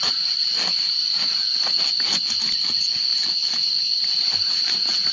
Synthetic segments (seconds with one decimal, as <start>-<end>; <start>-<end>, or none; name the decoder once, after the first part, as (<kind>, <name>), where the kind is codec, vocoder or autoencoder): none